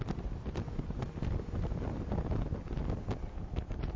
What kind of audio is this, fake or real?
real